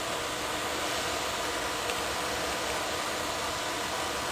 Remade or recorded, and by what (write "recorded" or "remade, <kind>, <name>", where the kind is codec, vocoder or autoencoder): recorded